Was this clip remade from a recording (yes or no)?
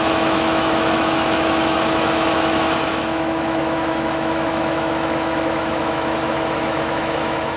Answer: yes